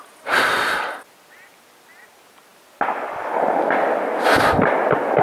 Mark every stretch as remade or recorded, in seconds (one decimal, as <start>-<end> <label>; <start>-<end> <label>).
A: 0.0-5.2 recorded